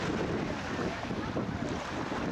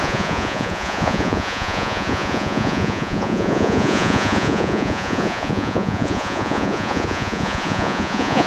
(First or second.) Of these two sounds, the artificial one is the second